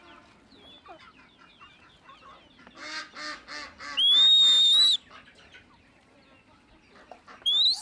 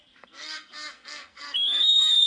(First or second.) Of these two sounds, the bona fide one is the first